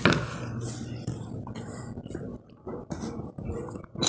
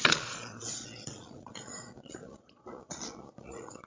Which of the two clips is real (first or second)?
first